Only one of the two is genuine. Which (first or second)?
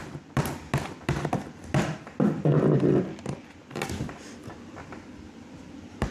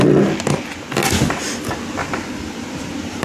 second